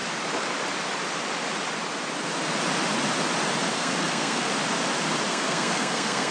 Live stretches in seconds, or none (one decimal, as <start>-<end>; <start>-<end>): 0.0-3.7; 4.5-5.3